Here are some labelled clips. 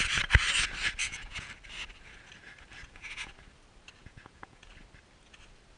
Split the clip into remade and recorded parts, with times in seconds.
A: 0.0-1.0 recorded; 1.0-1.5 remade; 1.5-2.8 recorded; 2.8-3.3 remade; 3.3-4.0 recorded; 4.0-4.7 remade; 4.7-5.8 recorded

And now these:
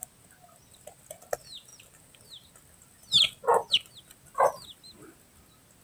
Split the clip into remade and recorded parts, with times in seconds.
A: 0.0-5.8 recorded